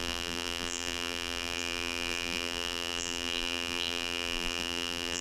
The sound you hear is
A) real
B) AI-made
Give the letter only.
B